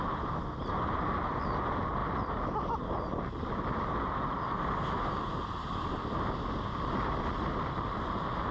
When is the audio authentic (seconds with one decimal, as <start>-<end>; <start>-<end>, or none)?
0.0-8.5